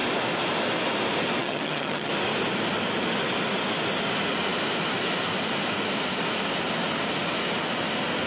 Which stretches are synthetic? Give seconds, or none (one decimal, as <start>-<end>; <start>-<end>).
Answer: 1.4-2.1